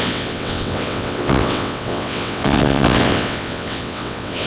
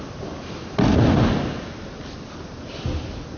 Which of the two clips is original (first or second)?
second